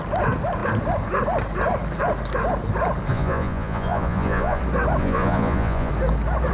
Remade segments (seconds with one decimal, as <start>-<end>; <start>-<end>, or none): 3.1-4.6; 5.0-5.9